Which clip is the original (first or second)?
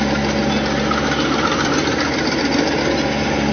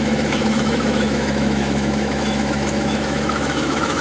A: first